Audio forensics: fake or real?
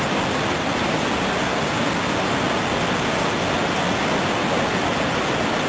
real